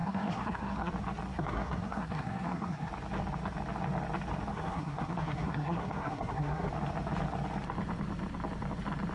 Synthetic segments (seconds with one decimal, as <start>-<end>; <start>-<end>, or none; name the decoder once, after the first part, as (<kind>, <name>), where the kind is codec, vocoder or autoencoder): 0.0-0.9 (codec, SNAC); 1.3-2.9; 4.5-6.7

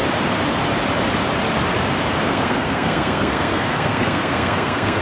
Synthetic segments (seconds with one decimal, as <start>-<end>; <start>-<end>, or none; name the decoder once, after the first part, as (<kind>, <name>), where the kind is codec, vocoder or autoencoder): 2.3-5.0 (codec, SNAC)

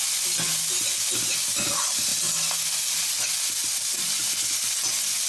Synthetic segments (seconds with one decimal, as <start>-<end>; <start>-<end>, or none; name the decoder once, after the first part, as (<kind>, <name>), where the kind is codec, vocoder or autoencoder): none

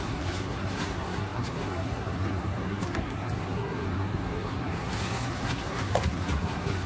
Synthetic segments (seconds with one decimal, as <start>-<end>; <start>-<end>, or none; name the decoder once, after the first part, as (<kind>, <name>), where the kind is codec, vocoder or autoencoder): 0.0-6.9 (codec, SNAC)